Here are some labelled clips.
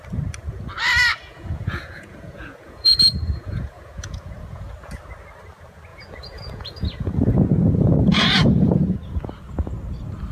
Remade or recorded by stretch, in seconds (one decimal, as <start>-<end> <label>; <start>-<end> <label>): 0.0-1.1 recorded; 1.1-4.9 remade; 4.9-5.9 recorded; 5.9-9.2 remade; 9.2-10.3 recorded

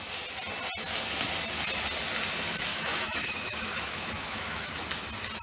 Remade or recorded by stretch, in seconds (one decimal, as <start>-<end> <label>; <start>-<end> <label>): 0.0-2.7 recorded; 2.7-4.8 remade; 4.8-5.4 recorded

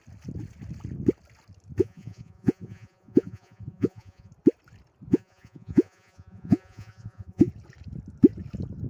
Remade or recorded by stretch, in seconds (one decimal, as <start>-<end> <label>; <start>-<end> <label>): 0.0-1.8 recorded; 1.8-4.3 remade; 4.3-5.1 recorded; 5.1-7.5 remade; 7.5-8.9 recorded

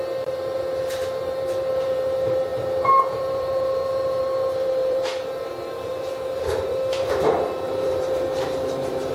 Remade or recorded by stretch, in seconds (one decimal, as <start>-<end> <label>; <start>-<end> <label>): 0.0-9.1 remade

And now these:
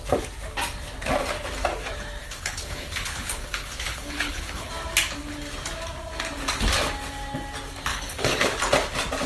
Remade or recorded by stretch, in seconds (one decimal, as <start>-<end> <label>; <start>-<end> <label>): 0.0-2.2 recorded; 2.2-4.7 remade; 4.7-7.9 recorded; 7.9-8.5 remade; 8.5-9.3 recorded

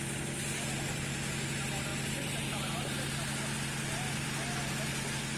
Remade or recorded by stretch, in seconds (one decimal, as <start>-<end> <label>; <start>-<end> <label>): 0.0-5.4 recorded